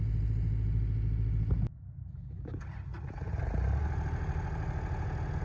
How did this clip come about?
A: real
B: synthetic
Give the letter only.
A